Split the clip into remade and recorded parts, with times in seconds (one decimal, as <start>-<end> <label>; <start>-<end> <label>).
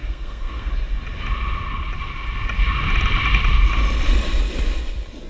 0.0-0.7 remade; 0.7-5.3 recorded